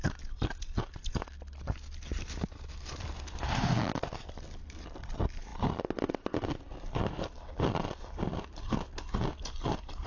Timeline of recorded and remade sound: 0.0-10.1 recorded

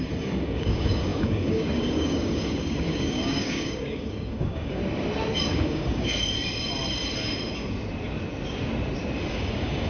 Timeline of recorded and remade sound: 0.0-4.8 remade; 4.8-5.5 recorded; 5.5-6.1 remade; 6.1-9.3 recorded; 9.3-9.9 remade

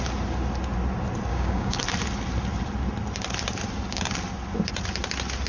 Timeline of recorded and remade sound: 0.0-1.3 recorded; 1.3-1.8 remade; 1.8-5.5 recorded

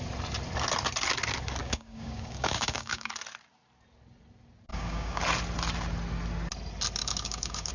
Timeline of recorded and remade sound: 0.0-1.6 recorded; 1.6-3.2 remade; 3.2-4.7 recorded; 4.7-5.2 remade; 5.2-7.0 recorded; 7.0-7.7 remade

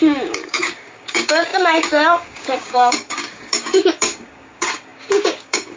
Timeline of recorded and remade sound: 0.0-5.8 remade

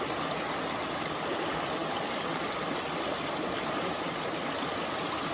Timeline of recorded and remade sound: 0.0-5.3 recorded

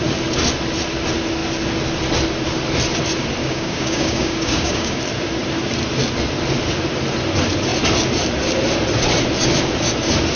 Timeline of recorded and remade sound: 0.0-3.4 recorded; 3.4-5.0 remade; 5.0-10.4 recorded

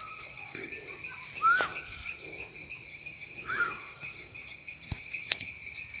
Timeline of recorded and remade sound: 0.0-0.7 remade; 0.7-2.9 recorded; 2.9-5.5 remade; 5.5-6.0 recorded